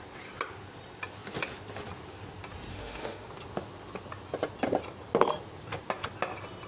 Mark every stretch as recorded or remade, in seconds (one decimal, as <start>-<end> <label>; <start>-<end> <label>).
0.0-2.7 recorded; 2.7-3.3 remade; 3.3-6.7 recorded